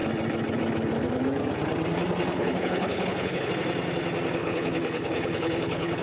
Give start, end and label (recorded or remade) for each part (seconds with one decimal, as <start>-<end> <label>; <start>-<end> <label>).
0.0-2.3 recorded; 2.3-3.5 remade; 3.5-4.4 recorded; 4.4-6.0 remade